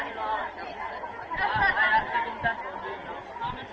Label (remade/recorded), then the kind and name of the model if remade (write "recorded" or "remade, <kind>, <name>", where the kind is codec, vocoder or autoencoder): recorded